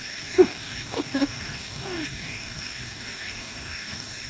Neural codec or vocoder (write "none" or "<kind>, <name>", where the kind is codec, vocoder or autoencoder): codec, DAC